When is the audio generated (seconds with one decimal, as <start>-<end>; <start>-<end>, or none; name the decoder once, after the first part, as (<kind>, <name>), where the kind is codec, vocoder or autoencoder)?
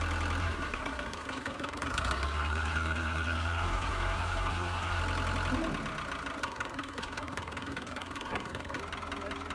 0.4-5.0 (codec, SNAC); 6.4-8.8